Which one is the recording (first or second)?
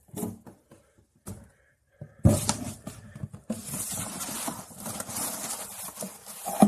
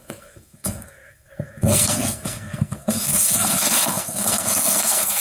first